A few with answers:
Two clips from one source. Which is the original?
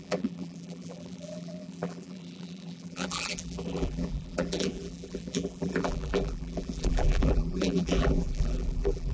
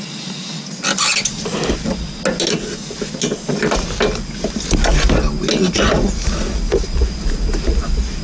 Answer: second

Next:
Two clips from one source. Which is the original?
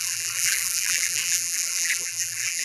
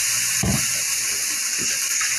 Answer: second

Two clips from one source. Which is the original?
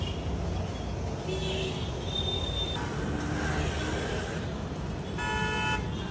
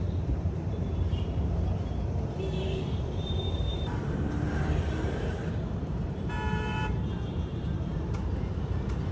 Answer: first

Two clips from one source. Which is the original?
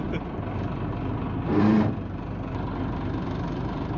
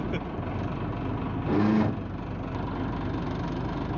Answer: second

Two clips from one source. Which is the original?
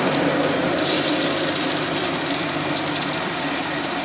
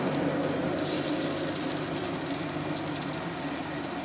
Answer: second